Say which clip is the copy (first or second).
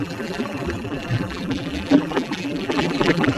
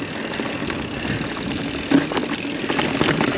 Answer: first